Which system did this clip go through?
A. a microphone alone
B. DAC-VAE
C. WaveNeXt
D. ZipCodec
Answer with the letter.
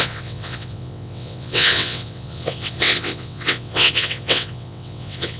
C